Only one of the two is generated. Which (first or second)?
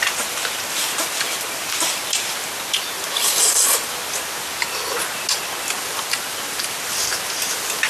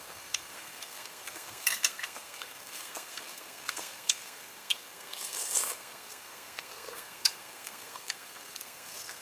second